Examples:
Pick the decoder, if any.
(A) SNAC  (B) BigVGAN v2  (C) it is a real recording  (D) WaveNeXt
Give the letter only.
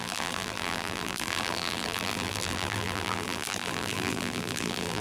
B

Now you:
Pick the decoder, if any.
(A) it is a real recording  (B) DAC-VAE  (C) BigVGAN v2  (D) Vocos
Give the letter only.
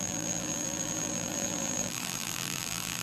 C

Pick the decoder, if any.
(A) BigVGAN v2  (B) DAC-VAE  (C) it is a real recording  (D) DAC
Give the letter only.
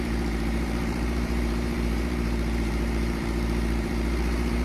A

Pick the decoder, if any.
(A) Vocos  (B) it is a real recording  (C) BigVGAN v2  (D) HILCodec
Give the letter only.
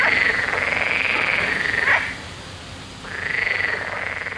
B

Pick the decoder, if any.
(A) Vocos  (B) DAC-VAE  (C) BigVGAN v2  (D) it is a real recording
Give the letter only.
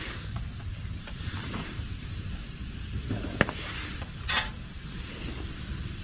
C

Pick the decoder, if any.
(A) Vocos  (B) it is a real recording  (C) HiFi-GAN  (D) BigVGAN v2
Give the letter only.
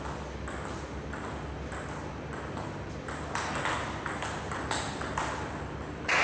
B